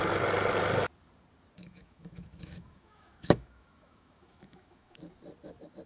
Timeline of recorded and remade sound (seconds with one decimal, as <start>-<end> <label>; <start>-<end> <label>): 0.0-1.6 recorded; 1.6-5.1 remade; 5.1-5.9 recorded